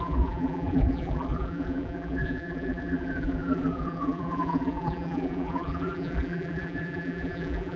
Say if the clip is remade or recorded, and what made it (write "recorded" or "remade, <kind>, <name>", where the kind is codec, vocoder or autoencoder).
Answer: remade, vocoder, BigVGAN v2